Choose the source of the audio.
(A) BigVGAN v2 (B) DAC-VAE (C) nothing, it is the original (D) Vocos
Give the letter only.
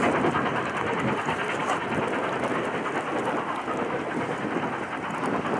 C